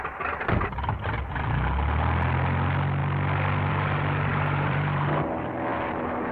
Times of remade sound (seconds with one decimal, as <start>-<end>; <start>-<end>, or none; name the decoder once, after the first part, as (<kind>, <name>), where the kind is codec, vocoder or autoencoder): 4.3-5.3 (vocoder, BigVGAN v2); 5.7-6.3